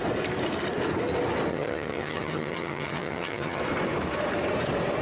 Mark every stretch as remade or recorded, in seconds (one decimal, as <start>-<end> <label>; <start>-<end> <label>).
0.0-1.5 recorded; 1.5-3.6 remade; 3.6-5.0 recorded